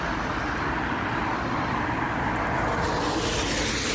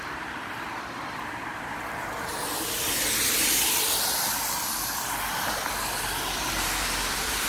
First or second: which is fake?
second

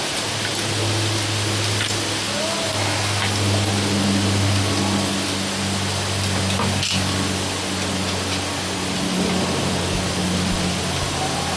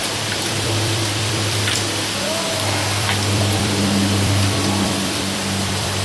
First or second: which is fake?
second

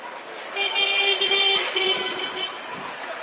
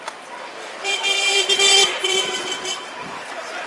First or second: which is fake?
second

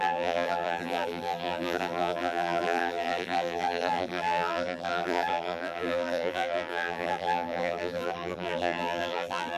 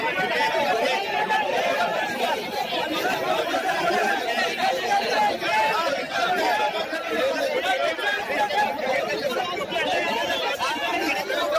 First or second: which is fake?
first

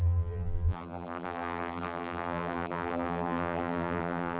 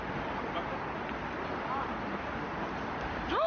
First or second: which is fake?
first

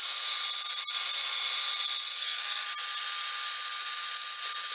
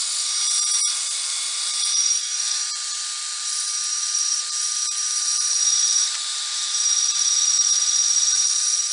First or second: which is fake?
second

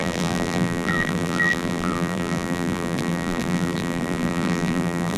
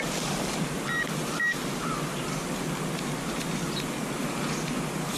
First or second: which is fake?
first